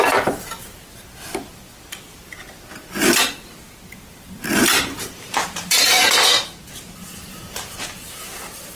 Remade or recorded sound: remade